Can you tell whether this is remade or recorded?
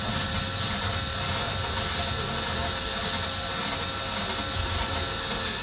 recorded